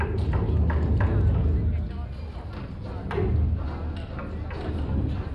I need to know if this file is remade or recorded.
recorded